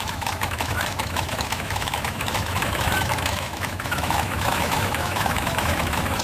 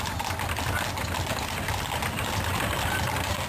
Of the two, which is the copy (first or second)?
first